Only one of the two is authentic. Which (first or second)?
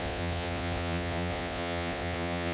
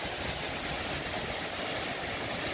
second